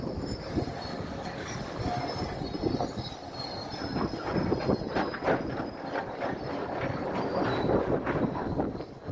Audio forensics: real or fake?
real